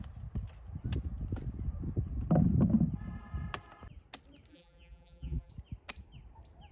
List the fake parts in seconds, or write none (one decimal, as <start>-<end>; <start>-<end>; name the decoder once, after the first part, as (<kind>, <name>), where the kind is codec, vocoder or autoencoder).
4.5-5.5 (vocoder, BigVGAN v2)